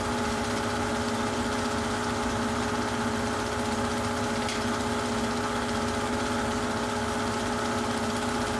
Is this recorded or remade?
recorded